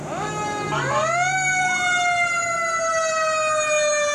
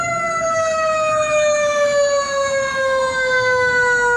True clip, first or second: first